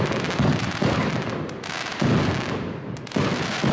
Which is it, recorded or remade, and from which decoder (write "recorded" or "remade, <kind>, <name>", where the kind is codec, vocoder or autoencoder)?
recorded